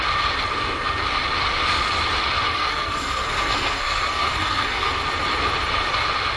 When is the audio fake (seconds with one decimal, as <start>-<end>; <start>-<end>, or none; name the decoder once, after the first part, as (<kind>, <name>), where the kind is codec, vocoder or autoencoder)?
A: 2.5-4.9 (codec, SNAC)